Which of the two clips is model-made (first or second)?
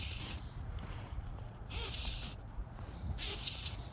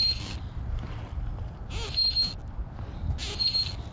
first